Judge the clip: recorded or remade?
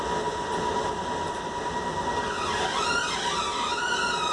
recorded